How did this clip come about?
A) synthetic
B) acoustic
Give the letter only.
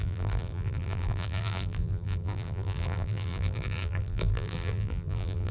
A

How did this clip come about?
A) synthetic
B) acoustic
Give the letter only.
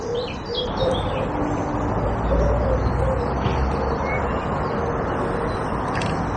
B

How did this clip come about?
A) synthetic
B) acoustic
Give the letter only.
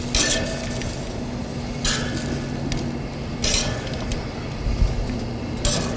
B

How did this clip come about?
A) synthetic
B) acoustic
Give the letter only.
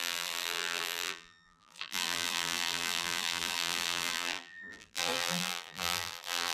A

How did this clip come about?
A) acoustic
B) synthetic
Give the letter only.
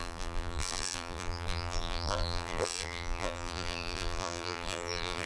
B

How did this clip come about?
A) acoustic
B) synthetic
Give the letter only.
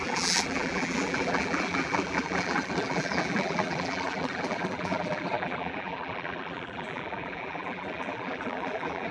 B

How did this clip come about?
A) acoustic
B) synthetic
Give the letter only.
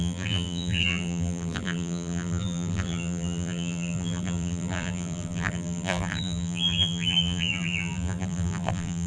B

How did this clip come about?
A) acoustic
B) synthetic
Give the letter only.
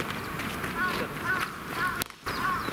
A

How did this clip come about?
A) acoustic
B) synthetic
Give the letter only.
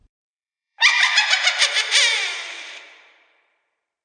B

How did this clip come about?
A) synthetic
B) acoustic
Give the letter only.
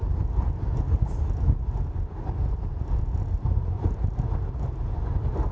B